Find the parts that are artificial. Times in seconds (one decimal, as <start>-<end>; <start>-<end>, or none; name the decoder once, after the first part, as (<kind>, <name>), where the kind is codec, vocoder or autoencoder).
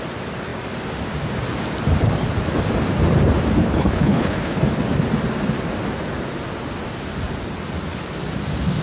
3.6-4.6 (codec, HILCodec)